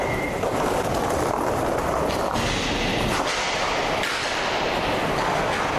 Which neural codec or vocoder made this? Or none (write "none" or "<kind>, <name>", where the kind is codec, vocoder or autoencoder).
none